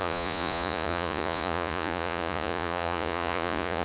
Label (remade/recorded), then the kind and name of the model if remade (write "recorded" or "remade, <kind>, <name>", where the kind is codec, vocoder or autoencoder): remade, vocoder, Vocos